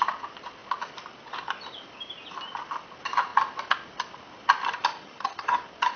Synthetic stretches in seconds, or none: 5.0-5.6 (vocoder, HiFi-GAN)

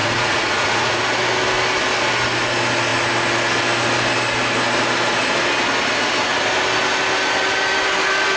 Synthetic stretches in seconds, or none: 0.0-1.0 (vocoder, Vocos)